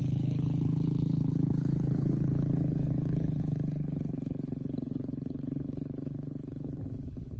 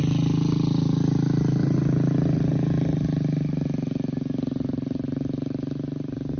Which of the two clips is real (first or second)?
second